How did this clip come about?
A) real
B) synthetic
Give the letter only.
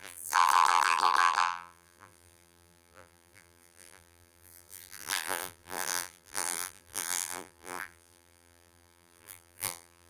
B